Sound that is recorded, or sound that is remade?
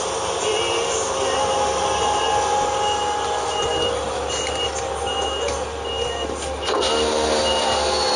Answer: recorded